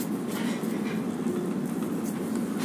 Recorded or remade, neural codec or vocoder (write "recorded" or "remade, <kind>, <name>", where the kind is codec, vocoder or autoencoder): recorded